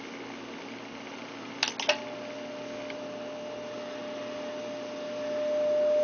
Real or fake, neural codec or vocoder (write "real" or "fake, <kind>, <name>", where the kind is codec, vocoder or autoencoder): real